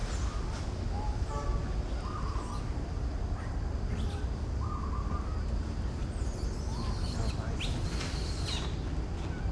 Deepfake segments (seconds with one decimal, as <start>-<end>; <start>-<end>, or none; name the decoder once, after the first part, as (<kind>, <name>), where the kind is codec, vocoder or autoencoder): none